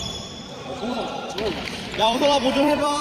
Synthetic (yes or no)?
yes